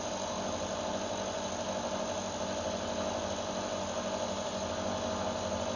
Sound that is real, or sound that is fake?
real